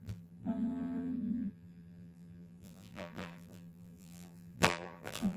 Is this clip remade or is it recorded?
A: remade